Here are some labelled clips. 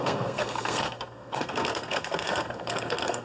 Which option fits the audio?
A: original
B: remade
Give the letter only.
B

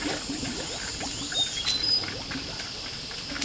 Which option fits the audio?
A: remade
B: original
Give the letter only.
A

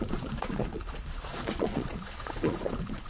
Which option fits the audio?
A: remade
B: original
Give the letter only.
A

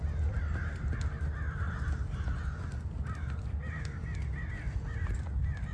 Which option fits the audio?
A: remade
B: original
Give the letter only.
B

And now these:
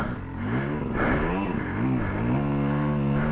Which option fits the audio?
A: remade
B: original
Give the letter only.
B